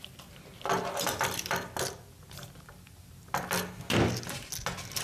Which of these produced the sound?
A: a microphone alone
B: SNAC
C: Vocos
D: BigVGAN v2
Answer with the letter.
A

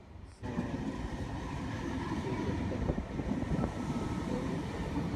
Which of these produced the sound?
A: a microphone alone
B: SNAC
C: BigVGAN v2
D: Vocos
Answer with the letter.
C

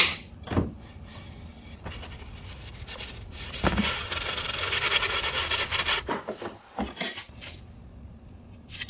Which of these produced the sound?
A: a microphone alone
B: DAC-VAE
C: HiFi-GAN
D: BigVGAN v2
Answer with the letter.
D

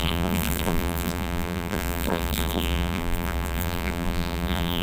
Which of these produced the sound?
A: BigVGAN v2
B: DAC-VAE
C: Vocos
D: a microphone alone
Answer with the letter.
A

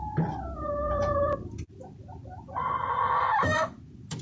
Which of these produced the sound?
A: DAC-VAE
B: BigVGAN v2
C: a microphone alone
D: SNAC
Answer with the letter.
B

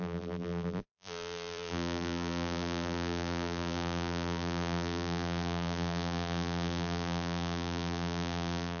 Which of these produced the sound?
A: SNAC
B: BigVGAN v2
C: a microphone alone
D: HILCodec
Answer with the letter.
B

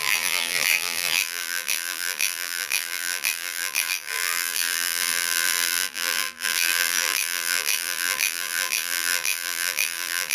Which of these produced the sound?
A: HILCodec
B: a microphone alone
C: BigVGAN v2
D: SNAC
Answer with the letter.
C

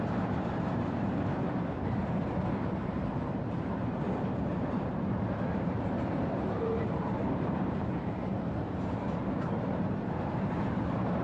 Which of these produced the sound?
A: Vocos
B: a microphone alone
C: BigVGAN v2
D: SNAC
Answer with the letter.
C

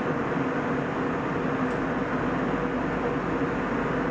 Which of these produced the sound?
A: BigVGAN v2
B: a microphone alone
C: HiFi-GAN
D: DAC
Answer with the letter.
B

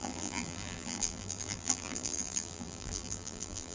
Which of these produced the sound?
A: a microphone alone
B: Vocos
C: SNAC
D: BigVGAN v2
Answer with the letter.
D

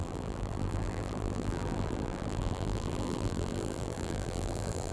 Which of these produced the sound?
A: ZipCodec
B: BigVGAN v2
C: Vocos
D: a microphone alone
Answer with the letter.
B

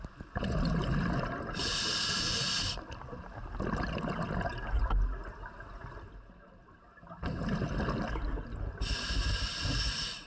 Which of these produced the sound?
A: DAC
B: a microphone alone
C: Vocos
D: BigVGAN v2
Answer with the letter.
B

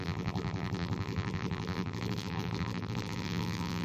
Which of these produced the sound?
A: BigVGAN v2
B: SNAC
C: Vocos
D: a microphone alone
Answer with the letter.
A